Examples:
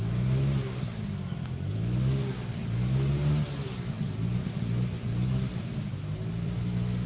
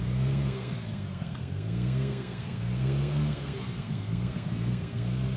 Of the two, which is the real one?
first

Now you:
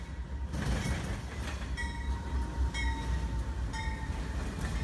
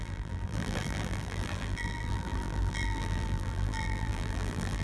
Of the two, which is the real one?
first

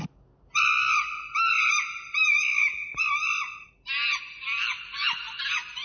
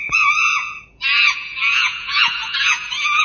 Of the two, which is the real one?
first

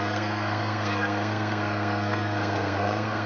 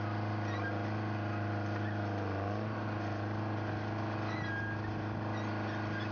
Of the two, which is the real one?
second